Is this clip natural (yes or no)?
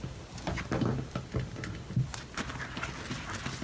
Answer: yes